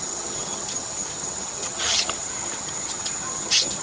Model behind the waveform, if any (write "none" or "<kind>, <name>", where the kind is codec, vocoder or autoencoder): vocoder, HiFi-GAN